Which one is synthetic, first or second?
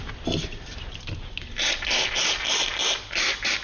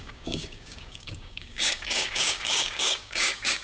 second